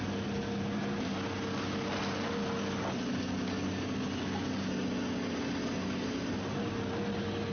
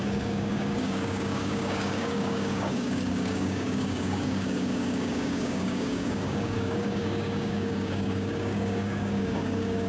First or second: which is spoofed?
second